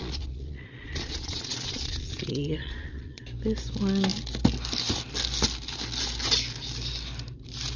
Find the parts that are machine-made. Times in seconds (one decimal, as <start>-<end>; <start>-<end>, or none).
0.0-3.2